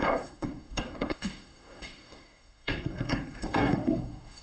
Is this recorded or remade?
remade